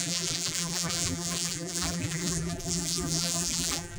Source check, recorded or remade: remade